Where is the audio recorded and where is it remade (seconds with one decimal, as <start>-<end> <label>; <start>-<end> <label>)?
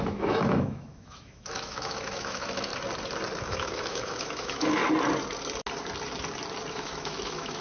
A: 0.0-2.7 remade; 2.7-3.4 recorded; 3.4-4.8 remade; 4.8-6.7 recorded; 6.7-7.6 remade